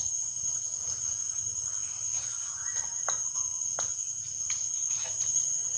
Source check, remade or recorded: recorded